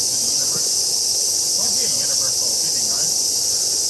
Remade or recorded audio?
remade